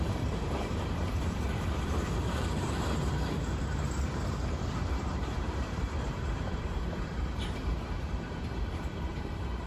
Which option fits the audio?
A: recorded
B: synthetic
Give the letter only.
B